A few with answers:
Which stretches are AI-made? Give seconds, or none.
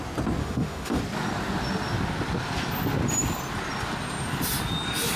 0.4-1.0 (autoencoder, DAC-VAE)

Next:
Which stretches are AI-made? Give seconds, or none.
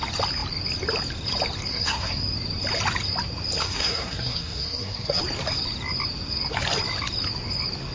1.7-2.2 (codec, SNAC); 3.6-5.2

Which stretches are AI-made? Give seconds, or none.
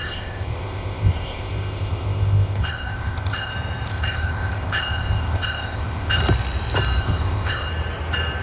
0.0-3.5 (codec, ZipCodec); 3.9-6.2; 7.0-7.7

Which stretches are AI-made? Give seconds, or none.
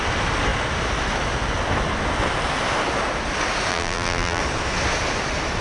3.7-4.4 (vocoder, BigVGAN v2)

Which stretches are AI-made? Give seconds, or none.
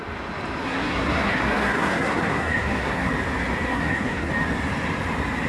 0.6-3.1 (codec, SNAC); 3.7-4.3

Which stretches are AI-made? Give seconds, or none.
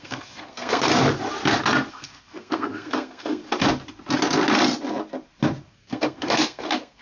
0.0-0.9 (codec, SNAC); 1.9-3.4; 5.7-7.0